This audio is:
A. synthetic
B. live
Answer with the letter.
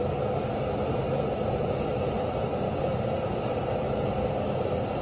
B